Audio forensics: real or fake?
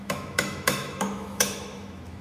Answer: fake